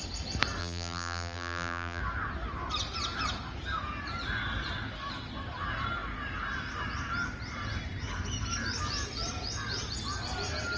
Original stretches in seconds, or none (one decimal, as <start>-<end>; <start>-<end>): 0.0-0.6; 2.0-10.8